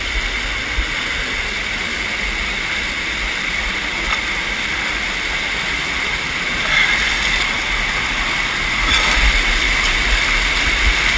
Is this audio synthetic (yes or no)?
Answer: no